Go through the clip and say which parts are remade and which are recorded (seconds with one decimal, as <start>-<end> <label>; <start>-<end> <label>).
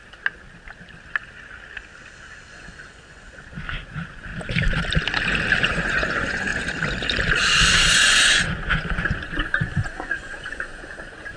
0.0-2.5 recorded; 2.5-4.3 remade; 4.3-5.6 recorded; 5.6-6.5 remade; 6.5-7.9 recorded; 7.9-11.4 remade